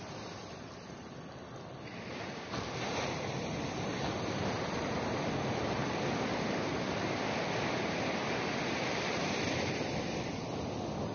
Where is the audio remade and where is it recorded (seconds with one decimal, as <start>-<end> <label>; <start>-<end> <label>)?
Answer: 0.0-5.8 remade; 5.8-6.6 recorded; 6.6-11.1 remade